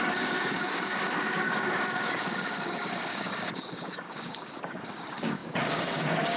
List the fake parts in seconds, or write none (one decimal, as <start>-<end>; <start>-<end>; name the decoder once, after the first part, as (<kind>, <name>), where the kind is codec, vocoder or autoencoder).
0.0-6.4 (codec, DAC)